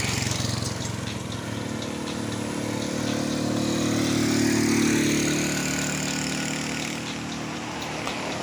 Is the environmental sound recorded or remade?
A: recorded